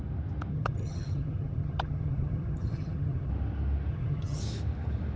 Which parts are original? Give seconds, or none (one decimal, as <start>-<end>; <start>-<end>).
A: 0.0-0.5; 3.3-3.9; 4.4-5.2